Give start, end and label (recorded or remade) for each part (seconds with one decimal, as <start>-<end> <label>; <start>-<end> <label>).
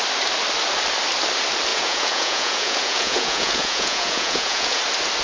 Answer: 0.0-1.7 recorded; 1.7-4.8 remade; 4.8-5.2 recorded